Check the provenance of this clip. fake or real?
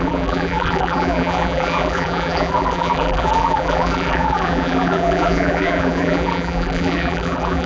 fake